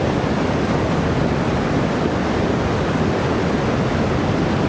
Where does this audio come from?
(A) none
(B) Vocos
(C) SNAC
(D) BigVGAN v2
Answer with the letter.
A